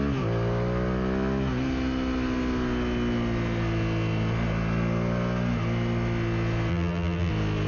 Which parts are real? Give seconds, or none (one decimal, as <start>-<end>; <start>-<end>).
0.0-6.7; 7.3-7.7

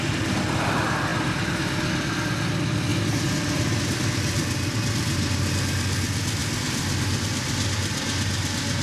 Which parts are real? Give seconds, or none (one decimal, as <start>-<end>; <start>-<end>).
0.0-2.9; 5.6-6.4; 7.2-8.8

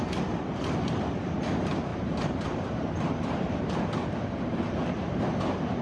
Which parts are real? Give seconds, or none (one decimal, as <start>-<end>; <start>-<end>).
0.0-1.9; 5.2-5.8

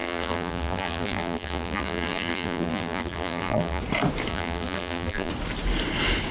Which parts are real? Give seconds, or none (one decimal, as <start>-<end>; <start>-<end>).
3.8-4.3; 5.3-6.3

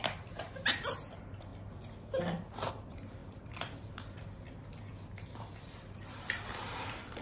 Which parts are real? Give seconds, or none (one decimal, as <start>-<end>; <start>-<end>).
1.5-2.7

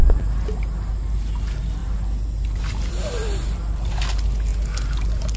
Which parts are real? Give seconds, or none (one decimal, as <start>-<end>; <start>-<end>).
0.0-5.4

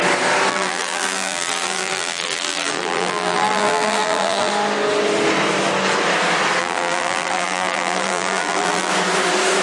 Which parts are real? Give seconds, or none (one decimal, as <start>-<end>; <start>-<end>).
0.0-0.5; 4.5-6.6; 8.9-9.6

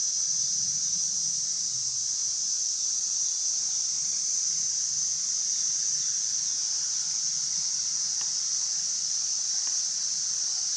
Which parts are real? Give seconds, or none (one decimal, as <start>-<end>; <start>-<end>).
1.6-2.2; 5.4-10.8